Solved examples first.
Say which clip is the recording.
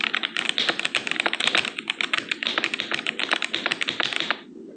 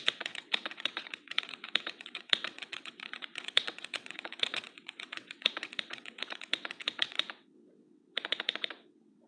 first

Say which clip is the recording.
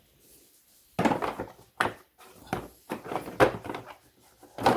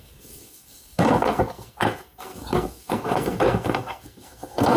first